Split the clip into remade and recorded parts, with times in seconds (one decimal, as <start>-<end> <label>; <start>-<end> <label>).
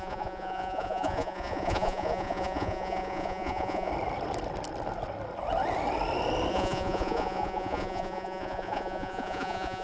0.0-3.9 remade; 3.9-6.5 recorded; 6.5-9.8 remade